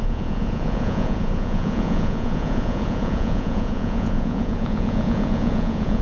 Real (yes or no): no